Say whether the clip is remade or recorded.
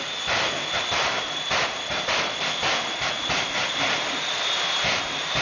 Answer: recorded